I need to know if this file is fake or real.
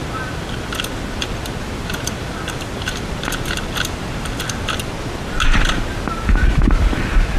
real